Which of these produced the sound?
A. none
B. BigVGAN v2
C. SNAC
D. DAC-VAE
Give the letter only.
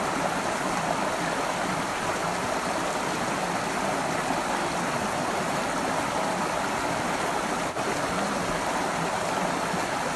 A